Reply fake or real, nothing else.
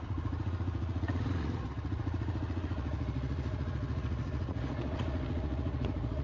fake